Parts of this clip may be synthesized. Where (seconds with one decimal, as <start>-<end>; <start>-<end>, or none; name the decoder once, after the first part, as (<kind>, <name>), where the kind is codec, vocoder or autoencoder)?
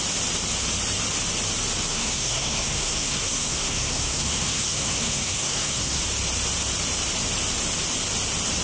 1.9-6.0 (codec, SNAC)